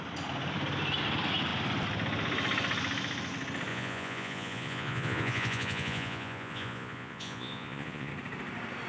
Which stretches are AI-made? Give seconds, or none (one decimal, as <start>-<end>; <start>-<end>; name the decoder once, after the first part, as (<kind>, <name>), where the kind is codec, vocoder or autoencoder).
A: 3.7-8.1 (vocoder, Vocos)